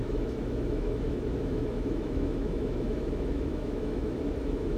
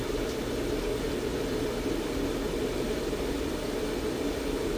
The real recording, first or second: second